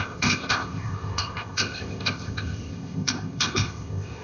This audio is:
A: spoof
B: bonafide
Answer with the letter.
A